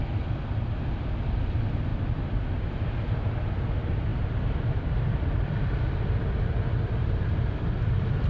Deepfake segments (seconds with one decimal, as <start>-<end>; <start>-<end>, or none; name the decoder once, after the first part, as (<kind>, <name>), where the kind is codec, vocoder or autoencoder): 1.9-2.6 (vocoder, BigVGAN v2); 4.1-8.3